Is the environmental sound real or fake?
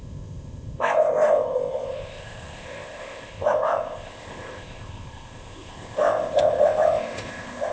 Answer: fake